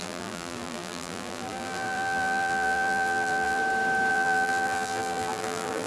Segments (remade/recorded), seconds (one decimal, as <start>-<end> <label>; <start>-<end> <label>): 0.0-3.6 remade; 3.6-4.1 recorded; 4.1-5.9 remade

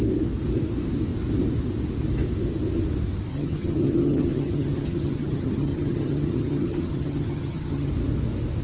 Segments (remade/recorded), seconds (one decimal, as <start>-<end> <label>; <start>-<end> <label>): 0.0-3.3 recorded; 3.3-7.9 remade; 7.9-8.6 recorded

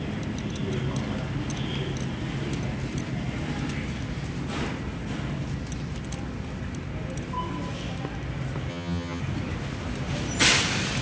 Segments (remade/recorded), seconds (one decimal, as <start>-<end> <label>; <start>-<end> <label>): 0.0-8.7 recorded; 8.7-9.2 remade; 9.2-11.0 recorded

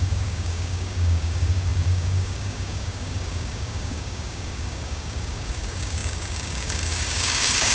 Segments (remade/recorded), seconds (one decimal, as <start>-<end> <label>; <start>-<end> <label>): 0.0-7.7 remade

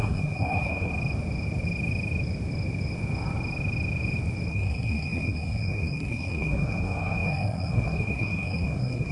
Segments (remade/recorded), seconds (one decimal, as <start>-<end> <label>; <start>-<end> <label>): 0.0-0.9 remade; 0.9-4.5 recorded; 4.5-9.1 remade